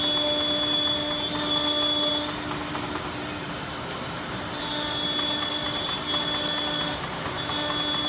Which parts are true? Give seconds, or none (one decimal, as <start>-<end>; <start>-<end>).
0.0-8.1